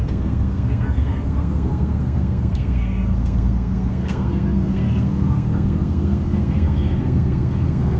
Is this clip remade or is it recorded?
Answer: remade